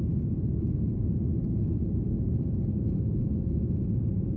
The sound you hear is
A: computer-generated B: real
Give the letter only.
A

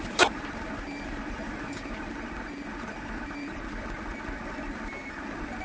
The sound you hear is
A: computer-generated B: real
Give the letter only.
B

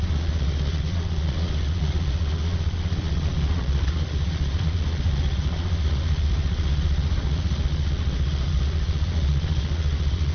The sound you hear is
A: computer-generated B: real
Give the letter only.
A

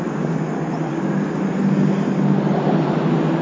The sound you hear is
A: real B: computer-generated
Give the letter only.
A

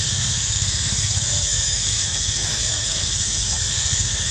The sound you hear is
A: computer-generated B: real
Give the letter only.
A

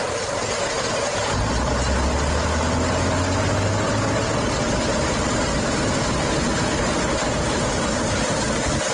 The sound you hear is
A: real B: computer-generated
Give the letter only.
A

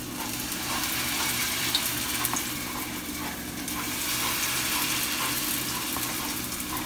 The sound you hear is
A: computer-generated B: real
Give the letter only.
A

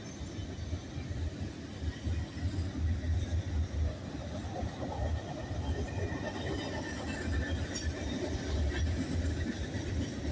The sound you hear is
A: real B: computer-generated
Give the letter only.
A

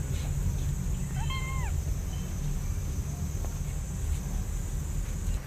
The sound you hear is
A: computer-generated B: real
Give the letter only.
B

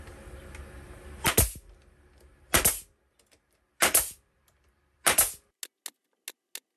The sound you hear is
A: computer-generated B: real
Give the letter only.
B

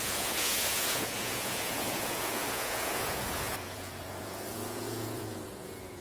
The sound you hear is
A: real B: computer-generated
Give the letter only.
B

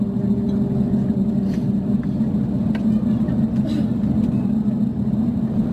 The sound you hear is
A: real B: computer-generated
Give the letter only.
A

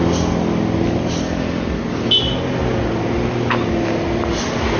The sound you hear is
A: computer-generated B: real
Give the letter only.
B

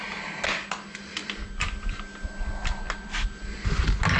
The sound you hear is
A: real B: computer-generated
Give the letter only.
A